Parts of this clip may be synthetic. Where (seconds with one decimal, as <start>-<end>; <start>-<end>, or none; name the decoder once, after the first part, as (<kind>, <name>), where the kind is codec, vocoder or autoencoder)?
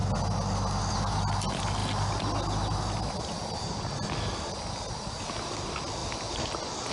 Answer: none